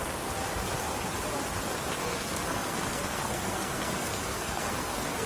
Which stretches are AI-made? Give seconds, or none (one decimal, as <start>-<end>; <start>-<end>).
2.0-5.3